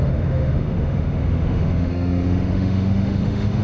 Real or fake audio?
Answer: fake